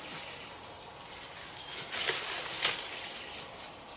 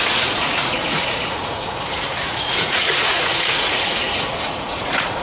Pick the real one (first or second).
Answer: first